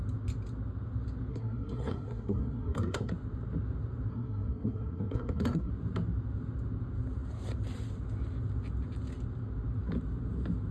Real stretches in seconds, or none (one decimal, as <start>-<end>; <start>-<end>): 0.0-1.3; 3.1-4.1; 5.7-10.7